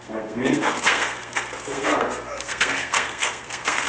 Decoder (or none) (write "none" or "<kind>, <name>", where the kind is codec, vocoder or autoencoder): codec, SNAC